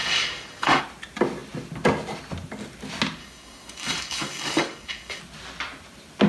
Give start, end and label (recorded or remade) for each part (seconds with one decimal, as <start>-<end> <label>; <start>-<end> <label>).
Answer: 0.0-0.8 remade; 0.8-3.2 recorded; 3.2-5.2 remade; 5.2-6.3 recorded